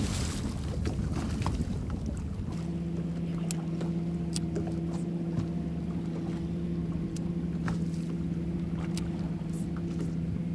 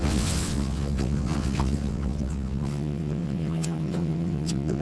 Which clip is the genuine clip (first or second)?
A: first